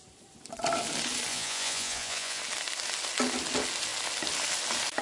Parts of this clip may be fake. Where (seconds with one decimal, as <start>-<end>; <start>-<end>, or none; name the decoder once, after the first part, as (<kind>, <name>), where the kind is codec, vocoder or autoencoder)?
1.3-2.4 (vocoder, Vocos)